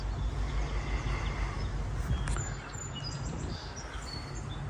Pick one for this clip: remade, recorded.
recorded